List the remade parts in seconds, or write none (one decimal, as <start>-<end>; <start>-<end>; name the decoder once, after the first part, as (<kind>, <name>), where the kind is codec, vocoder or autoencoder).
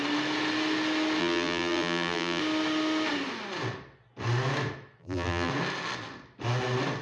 1.2-2.4 (vocoder, BigVGAN v2); 5.0-5.5